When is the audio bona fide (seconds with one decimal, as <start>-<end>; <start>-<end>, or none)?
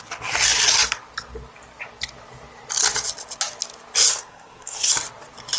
0.0-4.1; 4.9-5.6